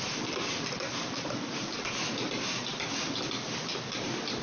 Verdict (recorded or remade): recorded